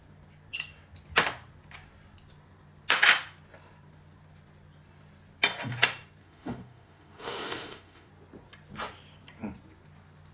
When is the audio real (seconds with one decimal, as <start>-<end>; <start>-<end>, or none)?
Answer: 0.0-6.2; 8.1-10.3